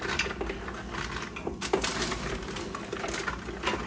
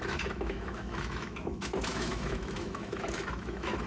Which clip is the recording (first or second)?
first